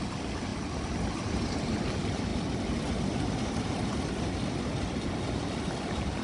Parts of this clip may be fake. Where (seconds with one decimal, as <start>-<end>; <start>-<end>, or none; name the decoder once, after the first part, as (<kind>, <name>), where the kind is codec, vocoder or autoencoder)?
none